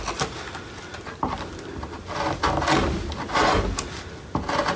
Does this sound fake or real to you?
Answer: real